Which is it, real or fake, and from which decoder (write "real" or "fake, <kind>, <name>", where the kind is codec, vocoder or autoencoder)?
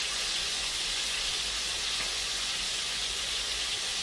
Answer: fake, vocoder, Vocos